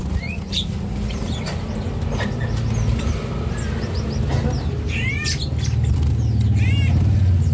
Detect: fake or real real